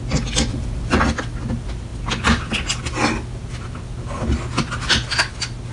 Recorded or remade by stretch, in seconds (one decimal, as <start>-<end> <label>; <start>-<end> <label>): 0.0-0.5 recorded; 0.5-1.0 remade; 1.0-5.7 recorded